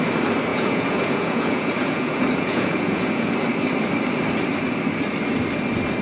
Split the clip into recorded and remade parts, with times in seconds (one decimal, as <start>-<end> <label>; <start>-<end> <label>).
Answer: 0.0-0.5 recorded; 0.5-3.3 remade; 3.3-6.0 recorded